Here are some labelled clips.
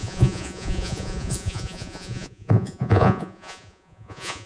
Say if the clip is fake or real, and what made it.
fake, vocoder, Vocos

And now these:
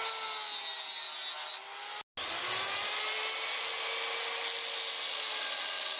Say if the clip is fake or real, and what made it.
real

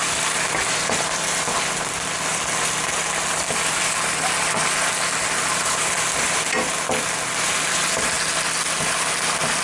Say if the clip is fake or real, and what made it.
real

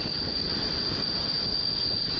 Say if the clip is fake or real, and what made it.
real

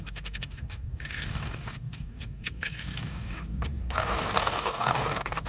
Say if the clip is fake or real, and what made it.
fake, codec, DAC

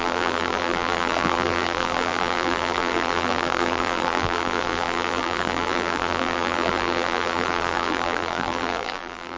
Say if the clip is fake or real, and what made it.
fake, vocoder, BigVGAN v2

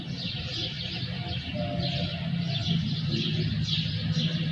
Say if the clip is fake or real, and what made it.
real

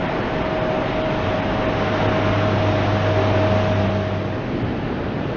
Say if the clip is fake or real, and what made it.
real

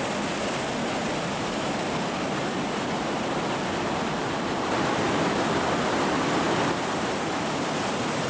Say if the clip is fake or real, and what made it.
real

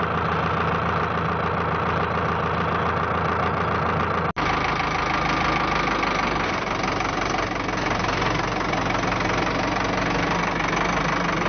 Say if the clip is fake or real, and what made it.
real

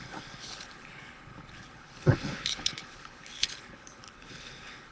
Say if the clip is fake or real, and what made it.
fake, codec, HILCodec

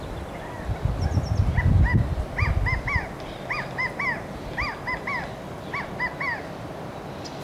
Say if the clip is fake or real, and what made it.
real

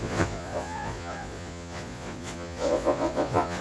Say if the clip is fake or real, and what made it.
fake, vocoder, Vocos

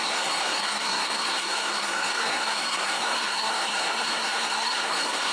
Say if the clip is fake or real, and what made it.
fake, codec, SNAC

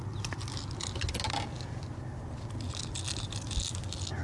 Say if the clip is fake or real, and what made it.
real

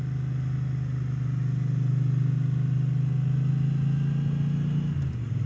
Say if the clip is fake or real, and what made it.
real